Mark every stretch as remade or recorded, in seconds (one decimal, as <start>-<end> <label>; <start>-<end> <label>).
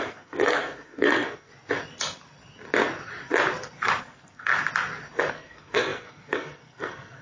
0.0-1.5 remade; 1.5-4.0 recorded; 4.0-4.5 remade; 4.5-5.3 recorded; 5.3-7.2 remade